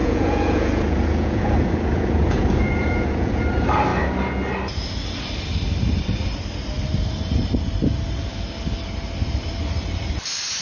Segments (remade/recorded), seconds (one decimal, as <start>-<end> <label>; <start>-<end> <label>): 0.0-3.4 remade; 3.4-10.6 recorded